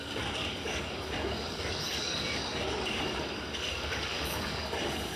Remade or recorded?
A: remade